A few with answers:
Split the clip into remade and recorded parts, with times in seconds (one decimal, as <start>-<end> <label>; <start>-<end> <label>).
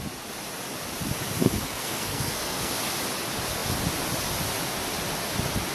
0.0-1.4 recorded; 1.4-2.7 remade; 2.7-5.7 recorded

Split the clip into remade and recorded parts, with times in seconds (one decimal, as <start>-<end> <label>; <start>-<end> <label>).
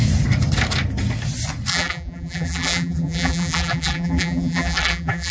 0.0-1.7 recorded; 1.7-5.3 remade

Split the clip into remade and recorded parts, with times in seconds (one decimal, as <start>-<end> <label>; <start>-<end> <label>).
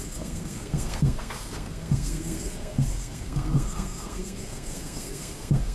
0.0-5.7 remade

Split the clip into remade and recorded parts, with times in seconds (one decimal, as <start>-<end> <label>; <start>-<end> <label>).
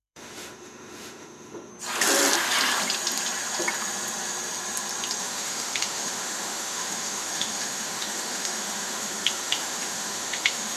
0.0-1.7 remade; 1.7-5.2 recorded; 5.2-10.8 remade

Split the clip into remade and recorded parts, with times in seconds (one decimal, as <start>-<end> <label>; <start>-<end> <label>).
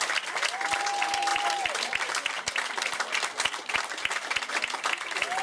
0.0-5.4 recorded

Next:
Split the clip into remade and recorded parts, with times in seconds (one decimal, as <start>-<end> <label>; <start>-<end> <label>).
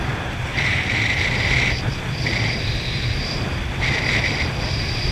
0.0-0.5 recorded; 0.5-3.6 remade; 3.6-5.1 recorded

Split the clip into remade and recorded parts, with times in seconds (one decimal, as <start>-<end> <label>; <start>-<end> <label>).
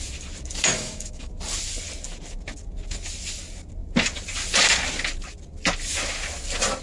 0.0-0.7 recorded; 0.7-1.3 remade; 1.3-6.8 recorded